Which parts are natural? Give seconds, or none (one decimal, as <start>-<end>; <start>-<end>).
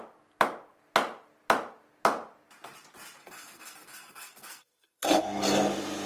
0.0-3.2; 5.2-6.1